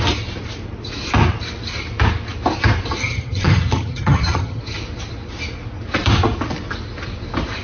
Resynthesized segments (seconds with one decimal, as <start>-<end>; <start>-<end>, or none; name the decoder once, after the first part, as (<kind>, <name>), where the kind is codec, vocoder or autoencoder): 3.0-4.6 (vocoder, HiFi-GAN)